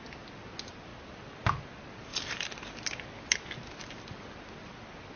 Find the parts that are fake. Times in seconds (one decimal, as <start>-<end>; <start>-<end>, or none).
0.9-1.6; 2.1-2.8; 3.8-4.7